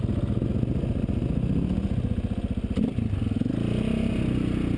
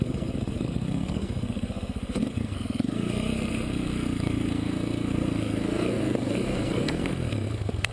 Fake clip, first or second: second